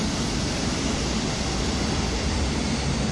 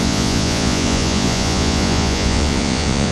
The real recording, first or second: first